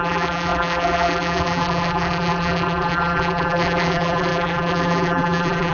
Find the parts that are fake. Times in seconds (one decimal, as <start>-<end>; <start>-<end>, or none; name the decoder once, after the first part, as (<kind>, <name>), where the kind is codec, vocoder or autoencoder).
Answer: 0.0-5.7 (vocoder, BigVGAN v2)